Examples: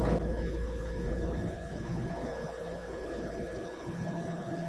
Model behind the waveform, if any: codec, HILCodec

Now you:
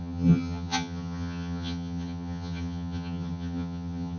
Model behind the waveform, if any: vocoder, HiFi-GAN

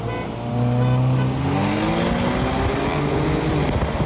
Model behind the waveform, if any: none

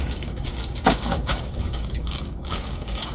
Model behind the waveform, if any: codec, DAC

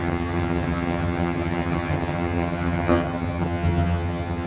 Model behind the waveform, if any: vocoder, HiFi-GAN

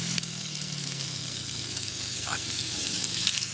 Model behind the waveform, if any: codec, SNAC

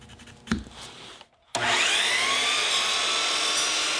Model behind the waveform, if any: none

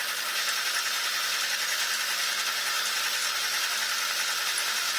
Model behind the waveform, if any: none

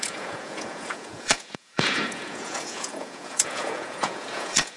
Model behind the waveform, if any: vocoder, Vocos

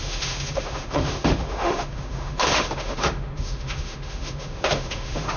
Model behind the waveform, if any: autoencoder, DAC-VAE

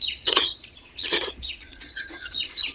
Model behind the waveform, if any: vocoder, Vocos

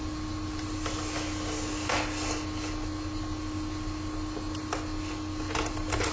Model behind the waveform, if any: none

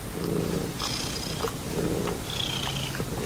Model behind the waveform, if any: none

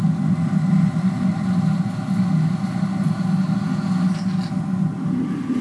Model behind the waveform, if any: none